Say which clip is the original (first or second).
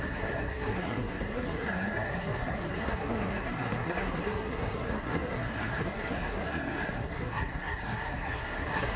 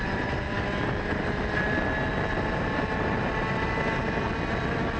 second